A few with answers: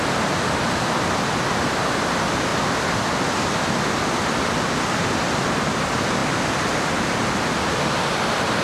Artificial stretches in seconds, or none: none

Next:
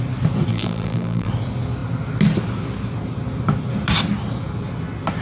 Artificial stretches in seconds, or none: 0.5-1.3 (vocoder, BigVGAN v2)